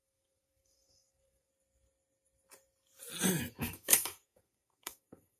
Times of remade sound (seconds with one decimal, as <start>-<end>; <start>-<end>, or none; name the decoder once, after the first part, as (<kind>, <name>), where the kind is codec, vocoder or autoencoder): 0.0-1.5 (codec, SNAC); 3.5-5.4